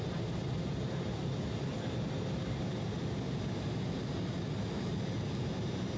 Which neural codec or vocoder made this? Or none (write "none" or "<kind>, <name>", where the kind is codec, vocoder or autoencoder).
none